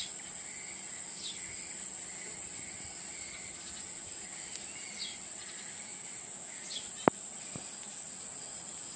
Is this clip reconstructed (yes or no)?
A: no